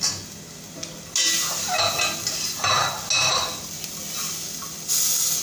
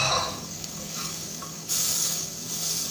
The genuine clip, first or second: first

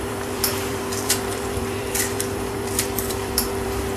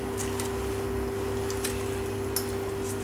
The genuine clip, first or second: second